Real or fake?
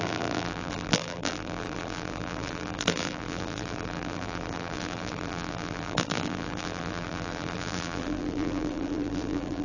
fake